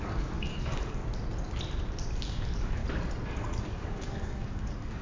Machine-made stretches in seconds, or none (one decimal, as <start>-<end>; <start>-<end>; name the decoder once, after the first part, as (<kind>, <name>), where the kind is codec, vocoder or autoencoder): 0.0-1.0 (codec, DAC); 2.2-2.8; 3.6-5.0